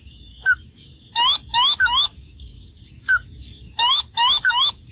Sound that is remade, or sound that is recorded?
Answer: remade